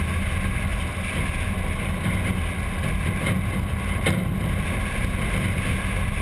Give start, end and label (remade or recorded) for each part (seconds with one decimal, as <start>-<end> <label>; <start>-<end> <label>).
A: 0.0-6.2 recorded